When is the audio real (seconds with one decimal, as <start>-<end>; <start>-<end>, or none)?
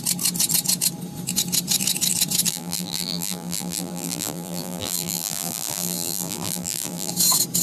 0.0-2.5; 7.1-7.6